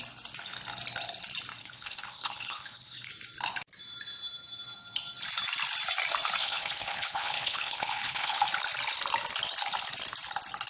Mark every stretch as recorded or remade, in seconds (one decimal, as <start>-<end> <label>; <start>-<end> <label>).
0.0-1.6 recorded; 1.6-3.1 remade; 3.1-6.4 recorded; 6.4-8.4 remade; 8.4-10.7 recorded